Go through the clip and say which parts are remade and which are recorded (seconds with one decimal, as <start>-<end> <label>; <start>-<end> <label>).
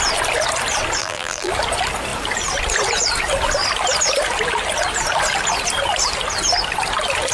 0.0-1.0 recorded; 1.0-1.5 remade; 1.5-7.3 recorded